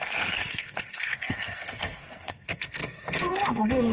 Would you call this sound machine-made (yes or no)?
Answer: yes